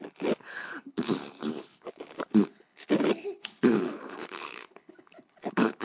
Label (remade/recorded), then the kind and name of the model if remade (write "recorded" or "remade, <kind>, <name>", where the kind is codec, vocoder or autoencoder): remade, codec, HILCodec